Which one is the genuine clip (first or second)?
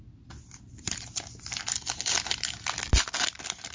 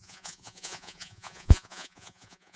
first